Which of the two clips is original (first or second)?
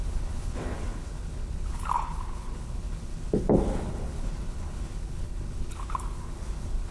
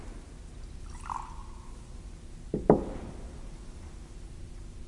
second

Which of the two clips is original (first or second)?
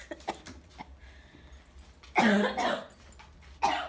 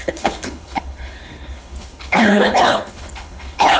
first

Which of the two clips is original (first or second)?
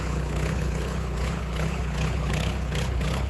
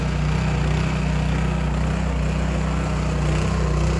second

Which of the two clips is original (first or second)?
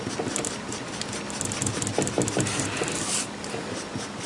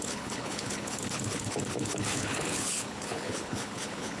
first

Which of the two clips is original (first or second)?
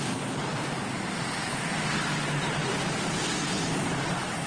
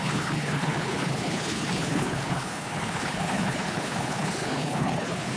first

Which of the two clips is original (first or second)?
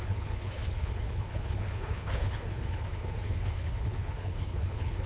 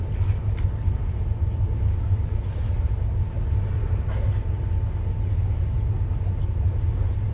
second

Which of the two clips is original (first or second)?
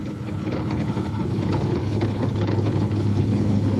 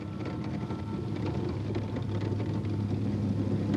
second